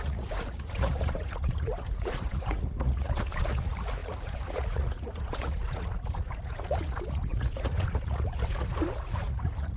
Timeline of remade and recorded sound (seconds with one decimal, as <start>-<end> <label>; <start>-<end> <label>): 0.0-9.8 remade